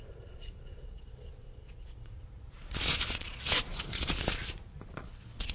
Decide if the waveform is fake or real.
fake